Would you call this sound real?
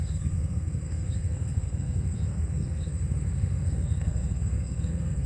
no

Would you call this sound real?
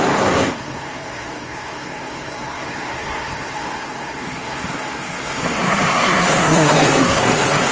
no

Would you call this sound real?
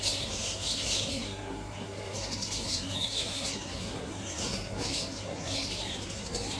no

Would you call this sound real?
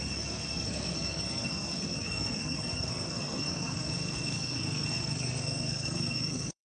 no